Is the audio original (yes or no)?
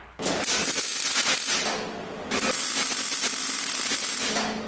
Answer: yes